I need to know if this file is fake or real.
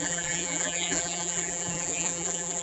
fake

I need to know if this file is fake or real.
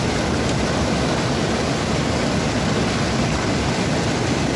real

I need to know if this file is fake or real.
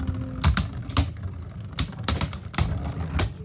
real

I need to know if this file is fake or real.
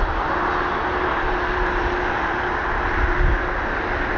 real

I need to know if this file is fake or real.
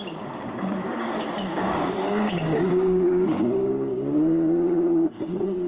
fake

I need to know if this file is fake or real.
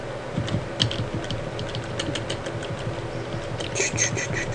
real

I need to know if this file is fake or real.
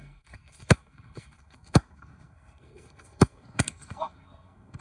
fake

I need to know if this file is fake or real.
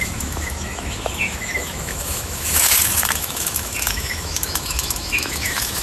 fake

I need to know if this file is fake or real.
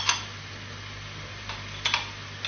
real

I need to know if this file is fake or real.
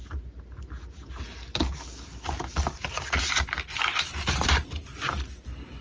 real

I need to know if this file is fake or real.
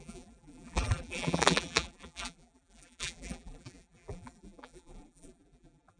fake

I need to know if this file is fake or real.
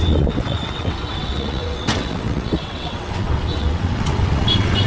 fake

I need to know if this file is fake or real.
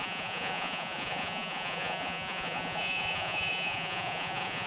fake